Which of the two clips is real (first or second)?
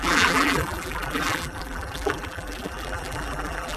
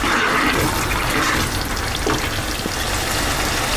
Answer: second